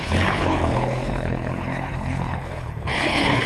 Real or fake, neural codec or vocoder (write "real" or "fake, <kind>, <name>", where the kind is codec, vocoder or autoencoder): fake, codec, HILCodec